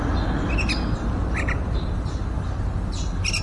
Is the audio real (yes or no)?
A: yes